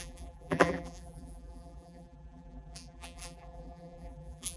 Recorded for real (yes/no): no